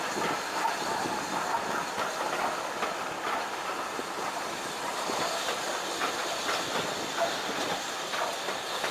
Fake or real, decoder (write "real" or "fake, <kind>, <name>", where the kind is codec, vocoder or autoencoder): real